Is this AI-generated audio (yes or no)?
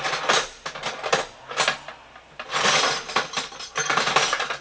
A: no